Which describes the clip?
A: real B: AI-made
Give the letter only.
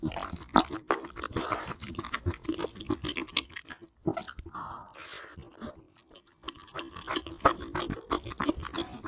A